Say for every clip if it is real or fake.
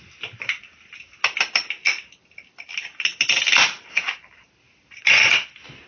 real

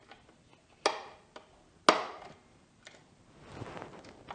real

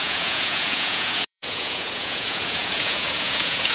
fake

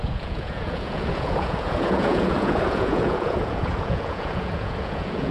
fake